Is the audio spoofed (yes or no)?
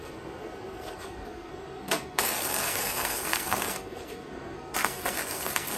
yes